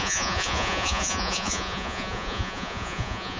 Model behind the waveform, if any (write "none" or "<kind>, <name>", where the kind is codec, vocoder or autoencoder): vocoder, Vocos